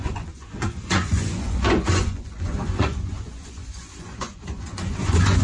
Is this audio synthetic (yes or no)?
yes